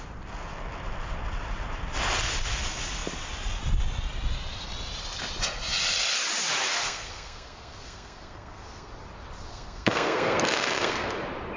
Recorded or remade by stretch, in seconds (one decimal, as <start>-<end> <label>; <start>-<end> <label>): 0.0-6.7 recorded; 6.7-8.9 remade; 8.9-9.5 recorded; 9.5-11.1 remade; 11.1-11.6 recorded